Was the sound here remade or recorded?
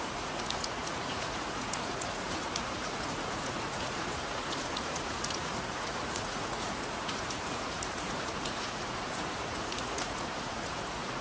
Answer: remade